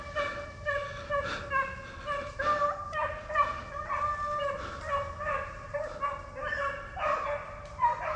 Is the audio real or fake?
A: real